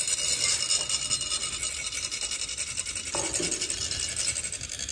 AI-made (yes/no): no